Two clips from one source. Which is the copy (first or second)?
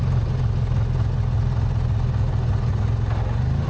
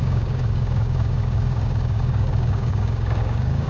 second